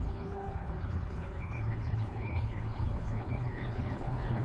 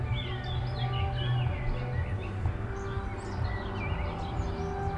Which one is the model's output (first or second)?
first